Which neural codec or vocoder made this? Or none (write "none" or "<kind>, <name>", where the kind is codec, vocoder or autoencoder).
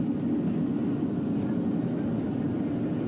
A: none